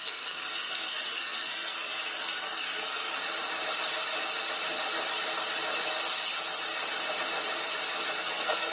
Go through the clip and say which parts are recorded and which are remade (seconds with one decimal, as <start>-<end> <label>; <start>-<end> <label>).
0.0-3.2 remade; 3.2-8.2 recorded; 8.2-8.7 remade